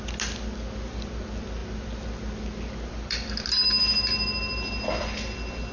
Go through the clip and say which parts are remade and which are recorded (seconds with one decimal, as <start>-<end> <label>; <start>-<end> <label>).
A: 0.0-5.7 recorded

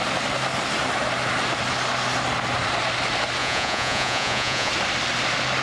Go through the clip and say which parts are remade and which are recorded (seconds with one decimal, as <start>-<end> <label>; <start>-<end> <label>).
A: 0.0-3.4 recorded; 3.4-4.7 remade; 4.7-5.6 recorded

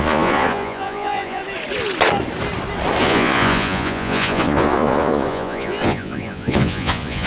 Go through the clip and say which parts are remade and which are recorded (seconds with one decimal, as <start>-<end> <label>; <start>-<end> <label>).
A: 0.0-1.4 remade; 1.4-3.0 recorded; 3.0-7.3 remade

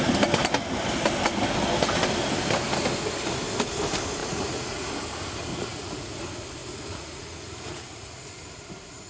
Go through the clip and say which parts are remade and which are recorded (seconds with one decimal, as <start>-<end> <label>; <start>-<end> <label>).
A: 0.0-4.2 recorded; 4.2-4.9 remade; 4.9-5.5 recorded; 5.5-6.1 remade; 6.1-6.6 recorded; 6.6-8.2 remade; 8.2-9.1 recorded

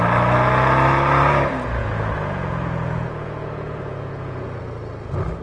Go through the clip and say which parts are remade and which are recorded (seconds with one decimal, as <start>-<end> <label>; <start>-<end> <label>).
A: 0.0-1.8 recorded; 1.8-4.6 remade; 4.6-5.4 recorded

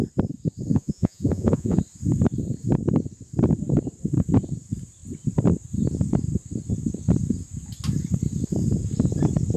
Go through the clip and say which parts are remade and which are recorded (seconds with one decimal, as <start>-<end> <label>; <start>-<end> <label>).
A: 0.0-0.7 recorded; 0.7-1.8 remade; 1.8-9.6 recorded

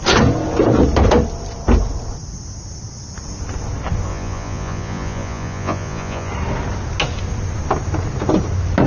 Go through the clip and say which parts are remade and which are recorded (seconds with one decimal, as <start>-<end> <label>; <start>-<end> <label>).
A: 0.0-4.1 recorded; 4.1-6.3 remade; 6.3-8.9 recorded

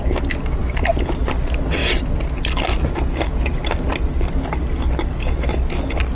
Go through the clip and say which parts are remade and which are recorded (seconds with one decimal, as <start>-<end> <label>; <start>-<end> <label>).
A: 0.0-6.2 recorded